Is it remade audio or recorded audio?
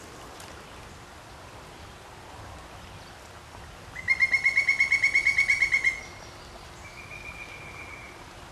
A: recorded